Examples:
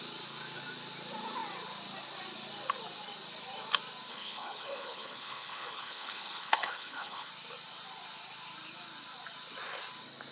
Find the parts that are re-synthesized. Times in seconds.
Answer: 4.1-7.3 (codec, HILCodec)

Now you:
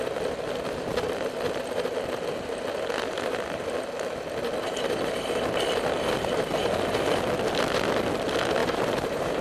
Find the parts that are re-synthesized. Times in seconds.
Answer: 8.6-9.4 (vocoder, BigVGAN v2)

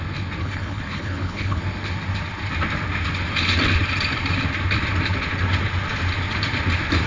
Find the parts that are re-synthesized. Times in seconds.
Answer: 0.4-1.6 (codec, HILCodec)

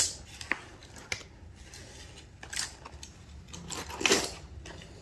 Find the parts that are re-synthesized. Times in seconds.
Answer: none